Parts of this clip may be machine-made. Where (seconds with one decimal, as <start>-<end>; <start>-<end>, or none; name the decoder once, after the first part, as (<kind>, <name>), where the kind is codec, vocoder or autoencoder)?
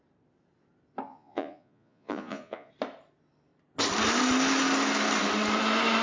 1.1-2.7 (vocoder, Vocos)